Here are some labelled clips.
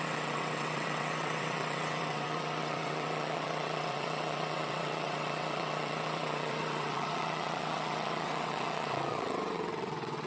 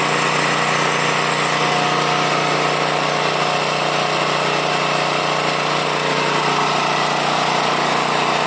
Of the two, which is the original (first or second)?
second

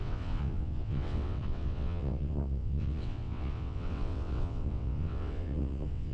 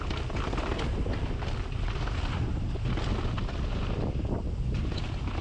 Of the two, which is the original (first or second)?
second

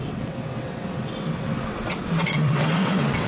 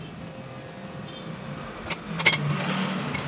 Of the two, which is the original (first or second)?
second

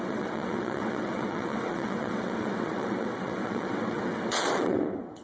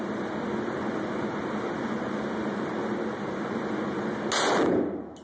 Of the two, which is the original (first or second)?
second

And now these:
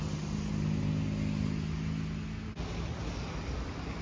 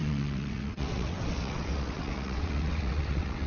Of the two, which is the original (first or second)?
first